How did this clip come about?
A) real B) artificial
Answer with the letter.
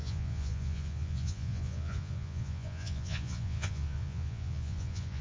B